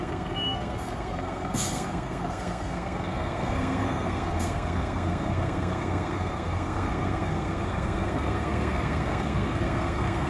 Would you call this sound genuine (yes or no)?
no